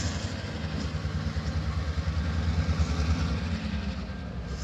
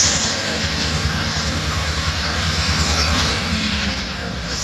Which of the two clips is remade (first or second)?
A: second